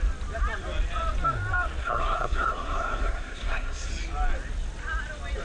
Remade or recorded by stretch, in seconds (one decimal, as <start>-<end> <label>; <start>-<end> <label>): 0.0-1.8 recorded; 1.8-3.9 remade; 3.9-5.4 recorded